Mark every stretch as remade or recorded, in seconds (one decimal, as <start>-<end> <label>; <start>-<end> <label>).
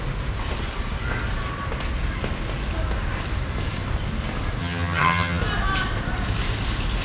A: 0.0-4.6 recorded; 4.6-5.4 remade; 5.4-7.0 recorded